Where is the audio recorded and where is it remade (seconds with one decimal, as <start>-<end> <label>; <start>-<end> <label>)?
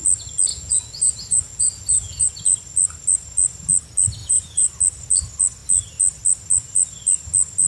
0.0-0.5 recorded; 0.5-2.3 remade; 2.3-4.2 recorded; 4.2-4.7 remade; 4.7-7.7 recorded